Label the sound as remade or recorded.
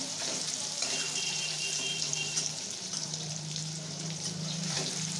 remade